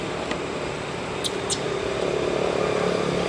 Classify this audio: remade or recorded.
recorded